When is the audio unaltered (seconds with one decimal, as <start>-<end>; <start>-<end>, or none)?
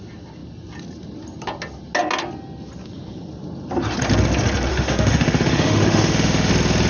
0.0-4.7; 6.5-6.9